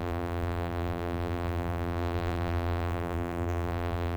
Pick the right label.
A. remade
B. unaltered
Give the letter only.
A